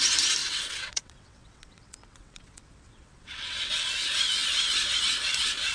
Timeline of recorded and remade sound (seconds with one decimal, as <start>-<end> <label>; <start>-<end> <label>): 0.0-0.4 recorded; 0.4-3.7 remade; 3.7-5.7 recorded